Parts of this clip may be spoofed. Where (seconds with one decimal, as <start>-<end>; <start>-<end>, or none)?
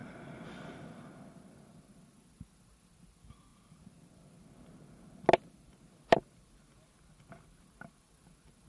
none